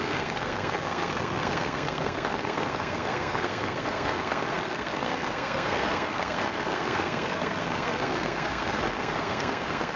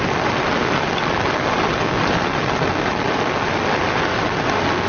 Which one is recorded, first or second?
second